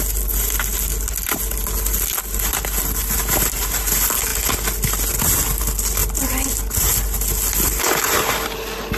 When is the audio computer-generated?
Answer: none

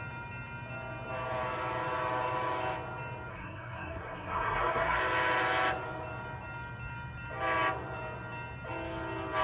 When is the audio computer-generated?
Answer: 3.3-5.0 (codec, SNAC)